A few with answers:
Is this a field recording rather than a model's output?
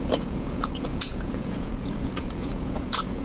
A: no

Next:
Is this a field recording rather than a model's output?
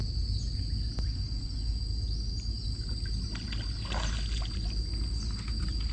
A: yes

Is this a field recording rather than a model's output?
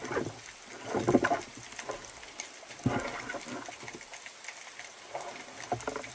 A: yes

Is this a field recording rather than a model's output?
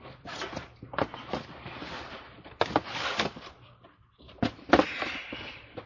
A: yes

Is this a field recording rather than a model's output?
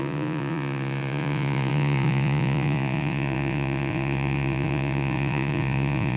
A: no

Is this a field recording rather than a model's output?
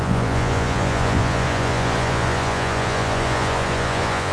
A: no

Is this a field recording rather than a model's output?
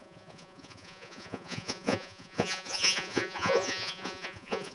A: no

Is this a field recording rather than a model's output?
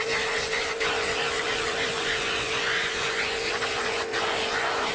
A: no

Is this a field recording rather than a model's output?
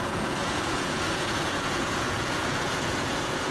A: no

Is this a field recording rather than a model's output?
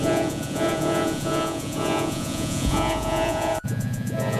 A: no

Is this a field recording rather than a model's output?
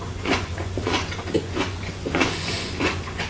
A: no